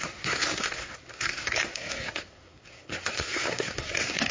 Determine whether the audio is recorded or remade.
remade